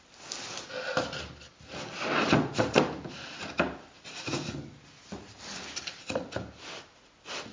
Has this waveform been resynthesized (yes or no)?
no